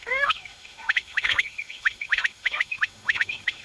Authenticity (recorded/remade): remade